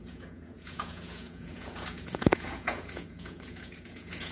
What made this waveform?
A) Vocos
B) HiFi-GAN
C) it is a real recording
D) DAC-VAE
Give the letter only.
A